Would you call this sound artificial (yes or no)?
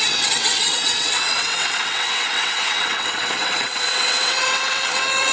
yes